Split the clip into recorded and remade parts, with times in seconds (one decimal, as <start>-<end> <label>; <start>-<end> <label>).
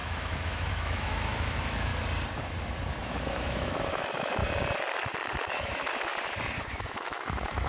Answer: 0.0-1.9 remade; 1.9-3.0 recorded; 3.0-4.4 remade; 4.4-5.5 recorded; 5.5-6.1 remade; 6.1-6.6 recorded; 6.6-7.7 remade